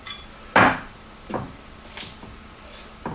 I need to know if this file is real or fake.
real